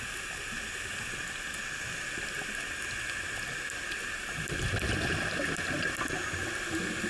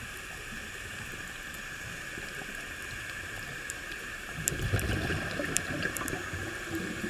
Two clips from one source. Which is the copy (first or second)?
second